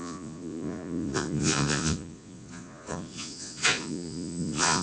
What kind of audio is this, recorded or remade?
remade